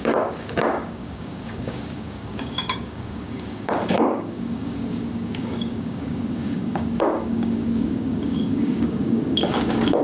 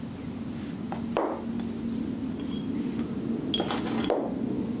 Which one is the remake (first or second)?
first